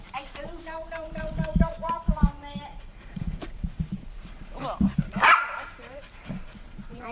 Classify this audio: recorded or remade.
remade